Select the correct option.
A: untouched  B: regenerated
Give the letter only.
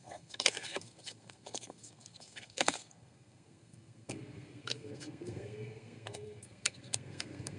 B